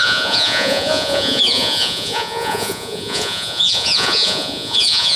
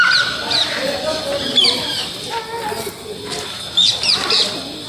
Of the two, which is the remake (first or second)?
first